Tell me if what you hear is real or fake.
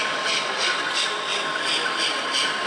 real